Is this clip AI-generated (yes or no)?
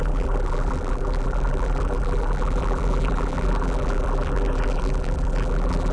yes